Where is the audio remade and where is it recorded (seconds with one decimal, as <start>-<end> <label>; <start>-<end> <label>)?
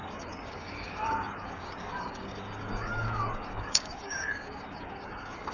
0.0-5.5 remade